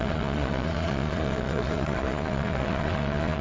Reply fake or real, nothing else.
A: fake